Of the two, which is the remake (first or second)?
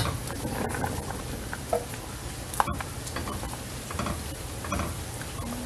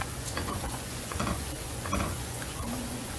second